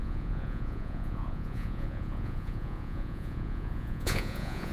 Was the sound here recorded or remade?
remade